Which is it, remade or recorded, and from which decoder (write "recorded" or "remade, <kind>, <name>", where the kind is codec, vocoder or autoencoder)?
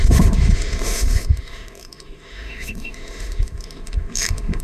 remade, autoencoder, DAC-VAE